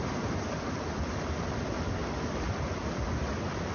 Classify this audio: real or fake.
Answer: real